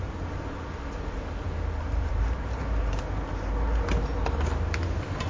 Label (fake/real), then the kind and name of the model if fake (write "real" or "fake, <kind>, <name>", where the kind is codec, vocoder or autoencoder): real